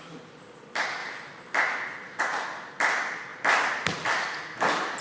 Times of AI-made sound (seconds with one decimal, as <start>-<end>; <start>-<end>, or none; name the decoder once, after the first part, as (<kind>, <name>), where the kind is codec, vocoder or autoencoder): 3.3-4.2 (vocoder, BigVGAN v2)